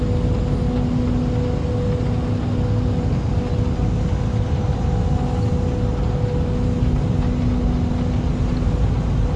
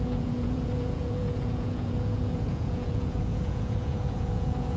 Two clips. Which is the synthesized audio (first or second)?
second